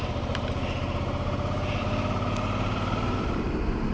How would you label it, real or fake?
fake